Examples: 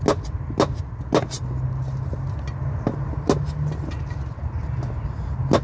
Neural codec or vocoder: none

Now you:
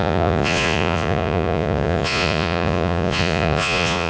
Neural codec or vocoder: vocoder, Vocos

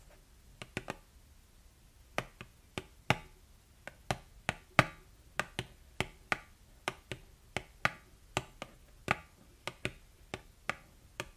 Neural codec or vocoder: none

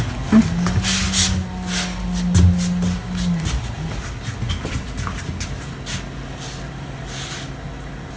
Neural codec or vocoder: none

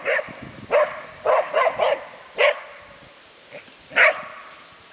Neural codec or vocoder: none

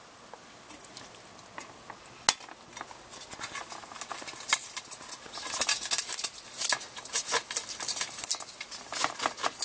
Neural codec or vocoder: none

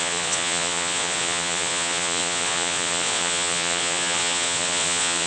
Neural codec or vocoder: vocoder, Vocos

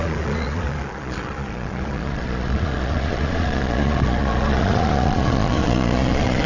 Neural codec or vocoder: vocoder, Vocos